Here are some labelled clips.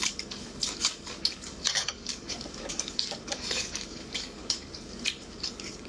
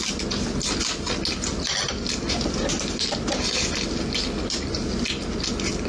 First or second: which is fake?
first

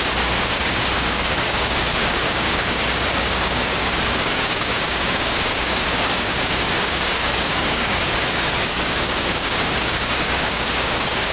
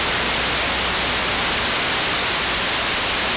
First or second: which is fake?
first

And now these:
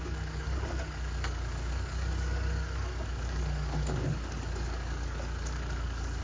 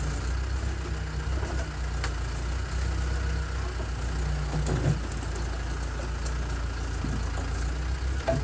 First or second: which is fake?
first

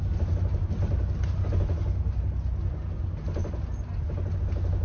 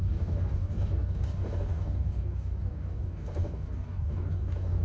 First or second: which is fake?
second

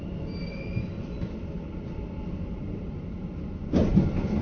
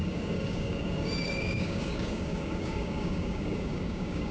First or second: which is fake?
second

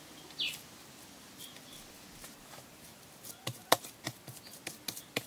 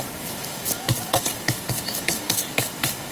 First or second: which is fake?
second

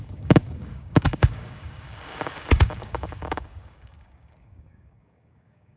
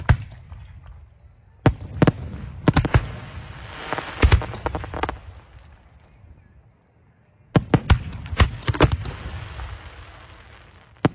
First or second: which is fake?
first